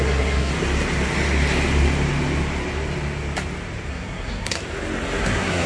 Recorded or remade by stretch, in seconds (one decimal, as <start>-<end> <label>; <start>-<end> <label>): 0.0-0.5 remade; 0.5-3.9 recorded; 3.9-4.6 remade; 4.6-5.2 recorded; 5.2-5.7 remade